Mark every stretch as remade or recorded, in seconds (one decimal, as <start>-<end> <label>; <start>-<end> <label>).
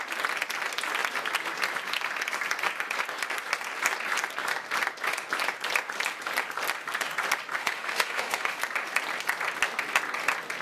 0.0-7.6 recorded; 7.6-8.6 remade; 8.6-10.6 recorded